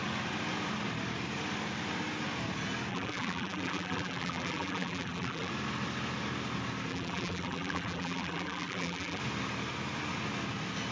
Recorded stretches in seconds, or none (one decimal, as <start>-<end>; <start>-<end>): 0.0-2.9; 5.5-6.9; 9.2-10.9